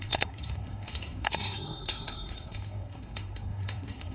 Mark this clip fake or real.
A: fake